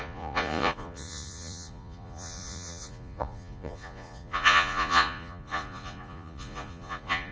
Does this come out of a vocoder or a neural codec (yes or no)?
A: yes